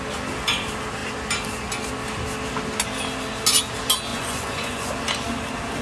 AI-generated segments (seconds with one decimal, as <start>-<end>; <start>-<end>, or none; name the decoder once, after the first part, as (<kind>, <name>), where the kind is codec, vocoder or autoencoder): 4.1-4.9 (vocoder, Vocos)